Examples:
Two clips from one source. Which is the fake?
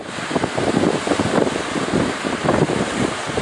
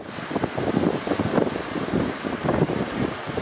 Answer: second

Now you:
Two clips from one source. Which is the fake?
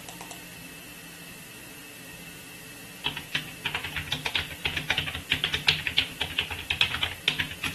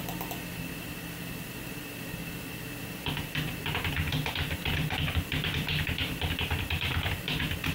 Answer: second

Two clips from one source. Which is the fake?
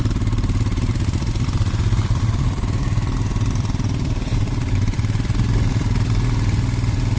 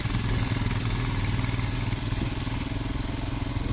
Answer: first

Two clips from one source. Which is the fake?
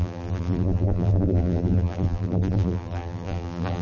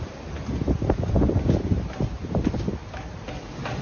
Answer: first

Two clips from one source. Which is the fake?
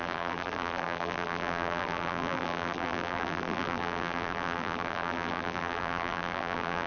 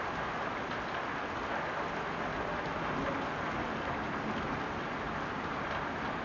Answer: first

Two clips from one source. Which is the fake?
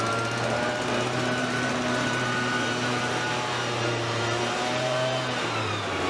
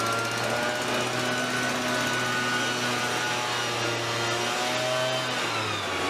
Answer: first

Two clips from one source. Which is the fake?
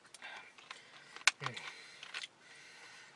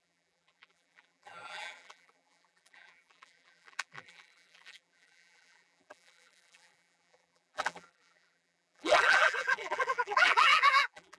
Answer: second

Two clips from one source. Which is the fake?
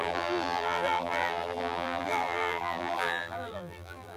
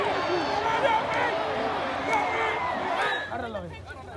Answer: first